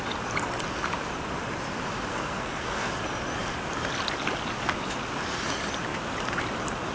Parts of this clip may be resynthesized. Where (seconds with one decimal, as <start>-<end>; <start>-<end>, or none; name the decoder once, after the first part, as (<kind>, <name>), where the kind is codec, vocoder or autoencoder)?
2.1-2.9 (codec, SNAC)